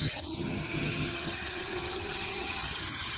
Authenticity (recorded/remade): remade